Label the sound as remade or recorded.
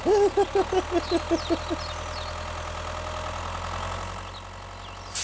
recorded